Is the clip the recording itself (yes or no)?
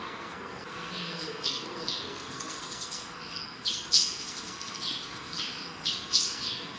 no